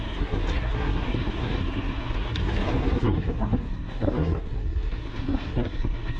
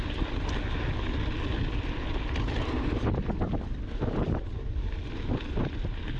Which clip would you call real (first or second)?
second